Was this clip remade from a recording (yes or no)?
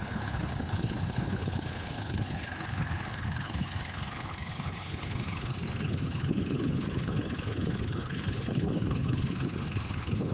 yes